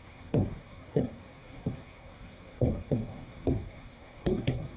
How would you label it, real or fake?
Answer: fake